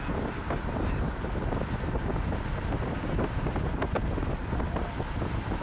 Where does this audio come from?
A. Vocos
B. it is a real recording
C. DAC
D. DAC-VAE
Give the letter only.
B